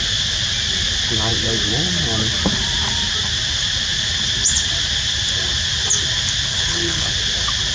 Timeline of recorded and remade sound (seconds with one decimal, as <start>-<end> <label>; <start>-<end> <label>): 0.0-6.5 recorded; 6.5-7.1 remade; 7.1-7.7 recorded